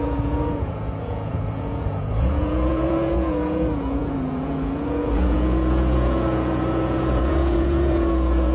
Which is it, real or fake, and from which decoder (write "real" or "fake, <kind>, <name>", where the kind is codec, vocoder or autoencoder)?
fake, vocoder, Vocos